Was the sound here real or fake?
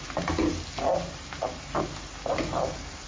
real